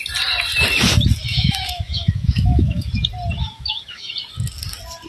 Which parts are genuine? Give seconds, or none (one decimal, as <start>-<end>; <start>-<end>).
0.0-1.3; 2.9-3.4; 4.1-5.1